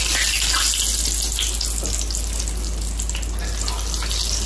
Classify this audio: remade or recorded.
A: recorded